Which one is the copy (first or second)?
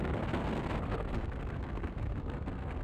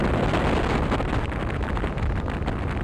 first